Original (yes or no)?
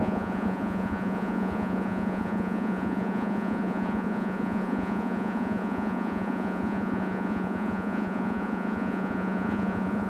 no